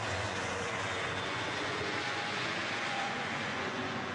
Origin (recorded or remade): remade